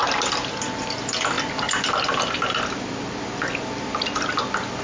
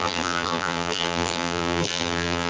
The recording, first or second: first